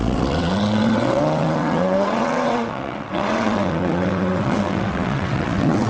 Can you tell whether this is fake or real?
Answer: fake